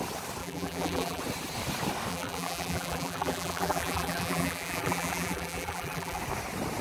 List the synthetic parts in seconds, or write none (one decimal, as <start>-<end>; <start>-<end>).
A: 0.4-1.2; 2.1-6.2